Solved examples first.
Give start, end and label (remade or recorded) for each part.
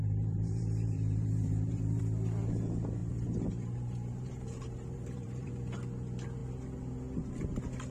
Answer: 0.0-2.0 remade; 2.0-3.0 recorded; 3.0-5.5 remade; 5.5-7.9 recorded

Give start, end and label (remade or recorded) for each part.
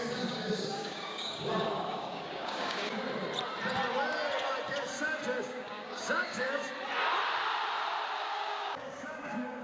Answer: 0.0-3.0 remade; 3.0-5.4 recorded; 5.4-6.6 remade; 6.6-8.2 recorded; 8.2-9.6 remade